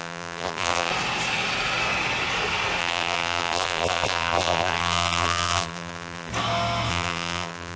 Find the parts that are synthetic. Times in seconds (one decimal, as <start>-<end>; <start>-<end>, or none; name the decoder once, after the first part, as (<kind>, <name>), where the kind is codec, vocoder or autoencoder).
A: 0.0-0.9 (vocoder, BigVGAN v2); 2.8-6.3; 6.9-7.8